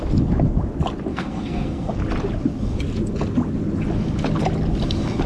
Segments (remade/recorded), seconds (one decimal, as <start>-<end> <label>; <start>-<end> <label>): 0.0-1.1 recorded; 1.1-1.9 remade; 1.9-5.3 recorded